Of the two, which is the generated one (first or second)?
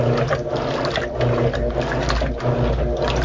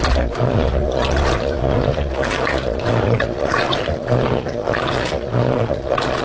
second